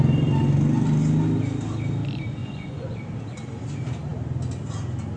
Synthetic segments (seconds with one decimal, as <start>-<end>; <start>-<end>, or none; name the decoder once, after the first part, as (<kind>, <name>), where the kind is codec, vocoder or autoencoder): 2.4-3.0 (vocoder, Vocos)